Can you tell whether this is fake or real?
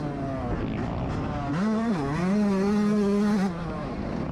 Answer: real